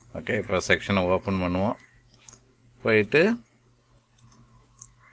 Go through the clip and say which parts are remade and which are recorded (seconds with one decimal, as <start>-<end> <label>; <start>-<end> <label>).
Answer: 0.0-0.5 remade; 0.5-1.7 recorded; 1.7-2.6 remade; 2.6-4.4 recorded; 4.4-5.1 remade